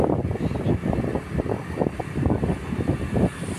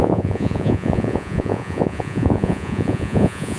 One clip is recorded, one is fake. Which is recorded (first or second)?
first